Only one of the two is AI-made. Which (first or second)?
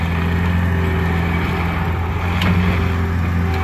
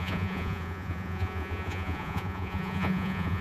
second